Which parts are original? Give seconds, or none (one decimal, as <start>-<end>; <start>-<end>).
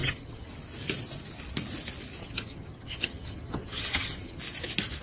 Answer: 0.5-2.2; 4.4-5.0